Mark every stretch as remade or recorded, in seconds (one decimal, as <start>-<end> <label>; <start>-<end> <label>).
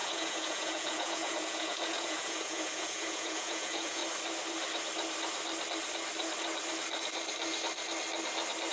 0.0-4.0 remade; 4.0-8.7 recorded